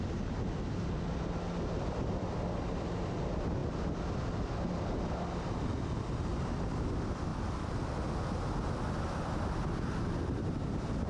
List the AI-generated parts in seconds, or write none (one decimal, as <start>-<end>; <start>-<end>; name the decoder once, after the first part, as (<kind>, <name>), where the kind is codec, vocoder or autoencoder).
none